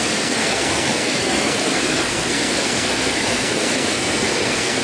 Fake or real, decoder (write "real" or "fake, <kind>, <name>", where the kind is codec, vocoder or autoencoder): fake, codec, SNAC